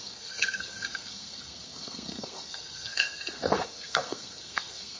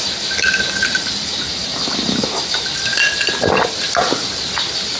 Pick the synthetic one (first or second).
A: first